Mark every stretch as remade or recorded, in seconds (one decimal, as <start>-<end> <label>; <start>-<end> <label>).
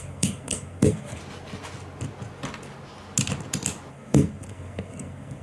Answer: 0.0-1.2 remade; 1.2-3.9 recorded; 3.9-5.4 remade